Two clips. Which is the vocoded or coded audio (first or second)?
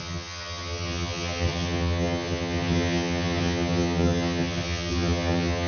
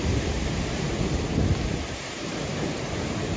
first